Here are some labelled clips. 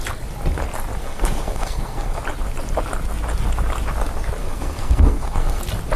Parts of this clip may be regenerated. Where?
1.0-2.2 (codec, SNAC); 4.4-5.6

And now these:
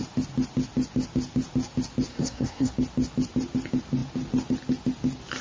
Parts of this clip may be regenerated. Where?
2.1-2.7 (codec, SNAC)

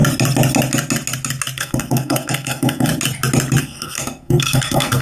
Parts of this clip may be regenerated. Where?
1.6-2.9 (codec, SNAC); 3.6-5.0

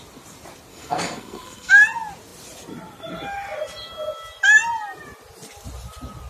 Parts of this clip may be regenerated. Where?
0.7-1.7 (codec, SNAC)

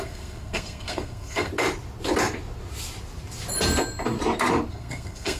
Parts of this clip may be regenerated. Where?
0.0-1.5 (codec, SNAC); 4.7-5.4